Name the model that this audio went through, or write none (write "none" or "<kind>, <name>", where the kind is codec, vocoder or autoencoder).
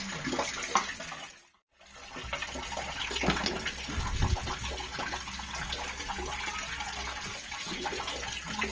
none